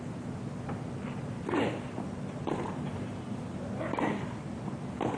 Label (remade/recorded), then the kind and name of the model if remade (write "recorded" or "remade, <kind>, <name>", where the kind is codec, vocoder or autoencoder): recorded